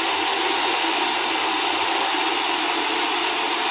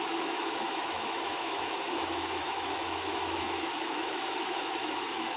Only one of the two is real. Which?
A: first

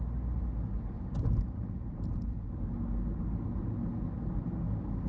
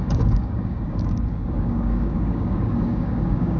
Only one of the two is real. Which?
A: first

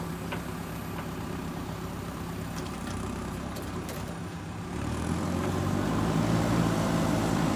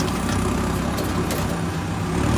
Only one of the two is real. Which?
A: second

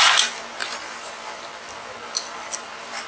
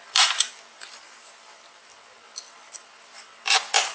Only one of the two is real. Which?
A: first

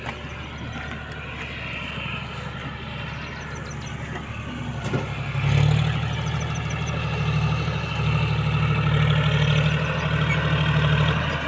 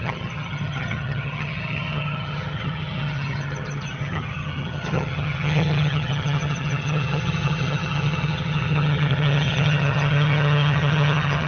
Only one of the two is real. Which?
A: first